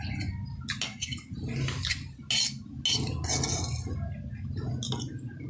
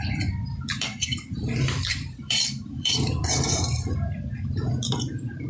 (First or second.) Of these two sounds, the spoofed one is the second